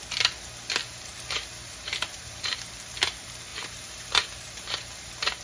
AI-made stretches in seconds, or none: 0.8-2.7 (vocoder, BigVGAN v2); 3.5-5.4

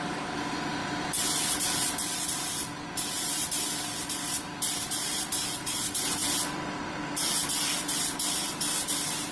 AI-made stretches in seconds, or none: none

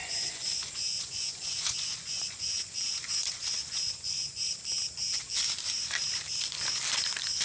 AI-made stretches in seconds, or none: 0.0-4.4 (vocoder, Vocos)

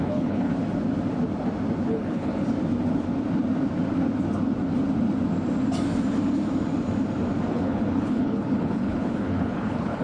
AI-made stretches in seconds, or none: 0.0-0.5 (codec, HILCodec); 1.9-2.3; 7.5-10.0

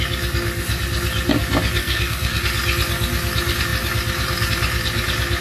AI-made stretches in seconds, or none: 1.8-2.4 (codec, SNAC)

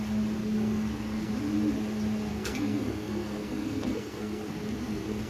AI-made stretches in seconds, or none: 0.4-1.3 (codec, SNAC); 2.3-5.3

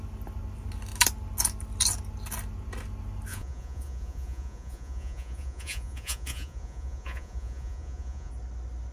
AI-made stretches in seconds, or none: 3.3-8.3 (vocoder, Vocos)